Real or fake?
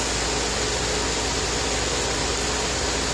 real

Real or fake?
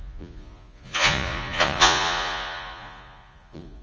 fake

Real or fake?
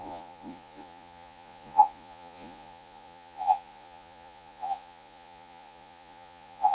fake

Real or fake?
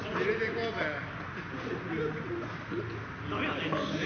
real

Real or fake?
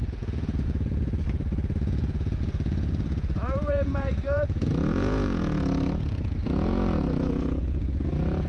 fake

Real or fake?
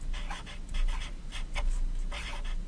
real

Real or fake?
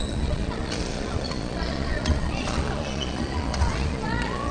fake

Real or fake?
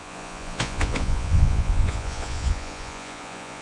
fake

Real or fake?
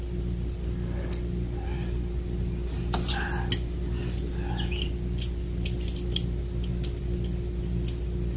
real